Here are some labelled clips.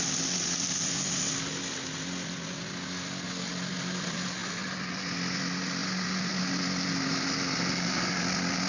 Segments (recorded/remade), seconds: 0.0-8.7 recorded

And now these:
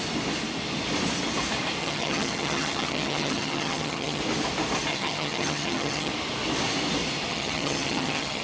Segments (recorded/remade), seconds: 0.0-1.8 recorded; 1.8-4.2 remade; 4.2-4.9 recorded; 4.9-6.1 remade; 6.1-7.3 recorded; 7.3-8.4 remade